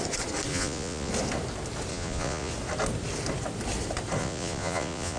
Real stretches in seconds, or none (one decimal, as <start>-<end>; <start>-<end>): 0.0-0.5; 1.1-1.9; 2.5-4.2

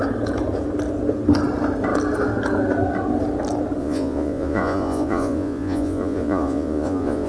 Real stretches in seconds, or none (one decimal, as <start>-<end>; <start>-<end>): 0.0-3.8

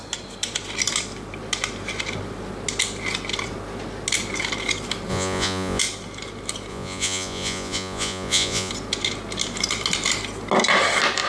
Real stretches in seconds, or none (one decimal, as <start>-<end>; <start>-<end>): 0.0-5.1; 5.8-6.7; 8.7-11.3